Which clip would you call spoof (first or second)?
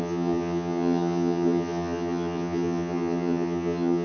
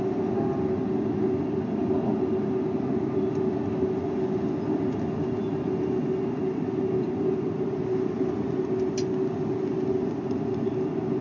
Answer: first